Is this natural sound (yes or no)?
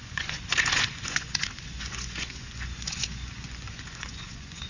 no